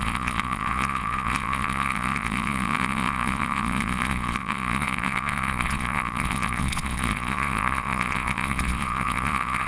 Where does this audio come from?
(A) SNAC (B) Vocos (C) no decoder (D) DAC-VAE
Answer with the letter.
B